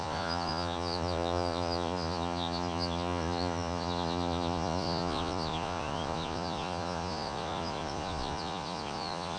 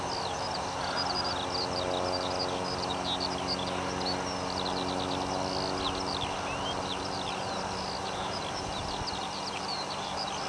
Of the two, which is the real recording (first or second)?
second